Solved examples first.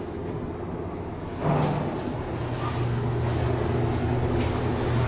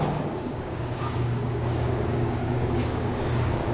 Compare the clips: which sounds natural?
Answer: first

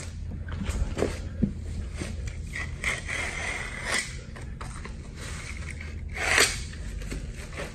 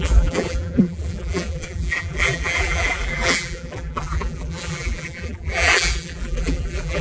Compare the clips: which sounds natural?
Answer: first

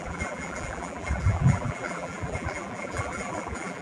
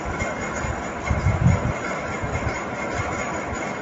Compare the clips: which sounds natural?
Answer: second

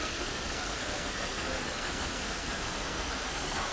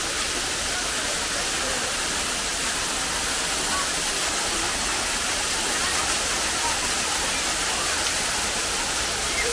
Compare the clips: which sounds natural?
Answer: second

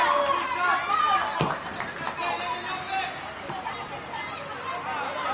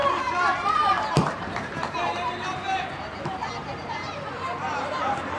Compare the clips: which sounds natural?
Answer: first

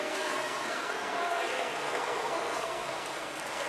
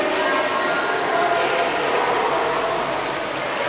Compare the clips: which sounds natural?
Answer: second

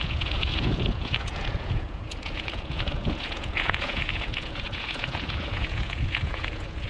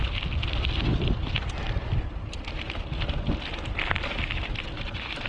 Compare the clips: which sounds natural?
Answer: second